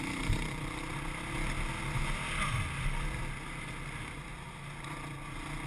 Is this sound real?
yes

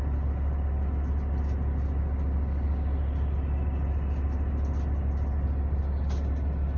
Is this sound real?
yes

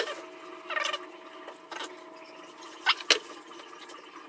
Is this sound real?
yes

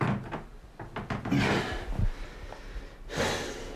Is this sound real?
yes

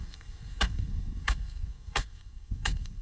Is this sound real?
no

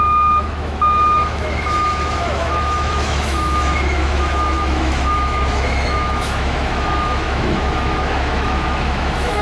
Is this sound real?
no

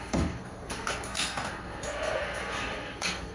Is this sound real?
no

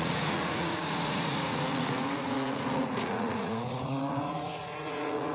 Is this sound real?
no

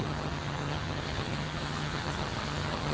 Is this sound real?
no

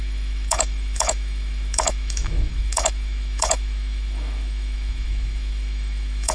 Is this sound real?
no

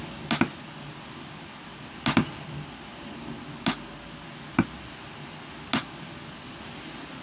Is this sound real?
yes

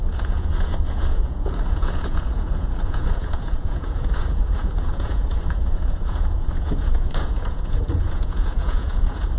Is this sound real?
no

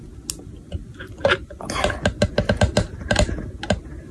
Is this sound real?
yes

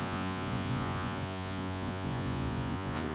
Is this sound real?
no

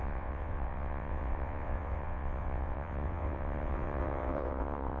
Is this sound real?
no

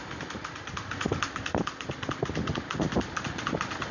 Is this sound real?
yes